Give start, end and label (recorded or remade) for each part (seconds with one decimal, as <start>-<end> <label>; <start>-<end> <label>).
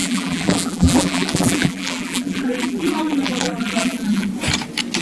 0.0-4.3 remade; 4.3-5.0 recorded